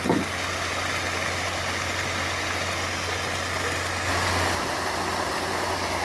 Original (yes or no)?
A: yes